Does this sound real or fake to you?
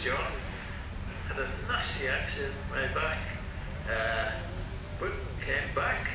real